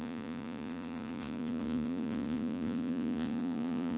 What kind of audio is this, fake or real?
fake